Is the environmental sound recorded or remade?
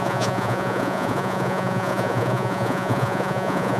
remade